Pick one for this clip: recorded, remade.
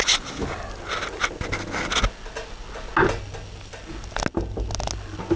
recorded